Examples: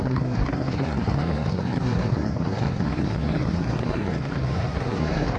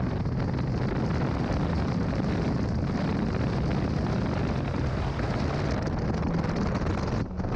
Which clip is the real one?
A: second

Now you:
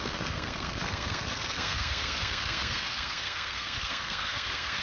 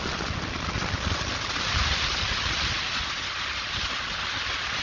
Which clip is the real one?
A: second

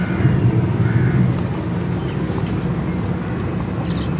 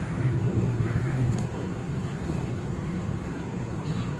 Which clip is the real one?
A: first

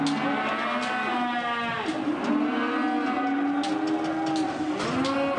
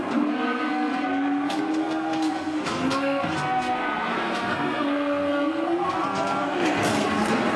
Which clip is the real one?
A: first